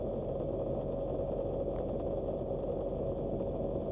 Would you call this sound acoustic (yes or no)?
yes